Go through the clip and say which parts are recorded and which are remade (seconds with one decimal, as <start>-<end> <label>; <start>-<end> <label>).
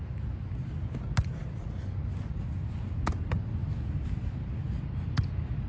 0.0-1.4 recorded; 1.4-2.4 remade; 2.4-5.7 recorded